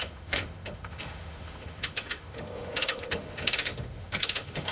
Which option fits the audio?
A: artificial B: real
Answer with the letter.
A